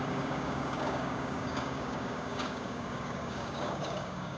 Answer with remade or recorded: remade